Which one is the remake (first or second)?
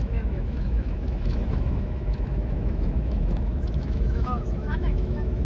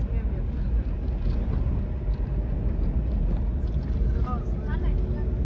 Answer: first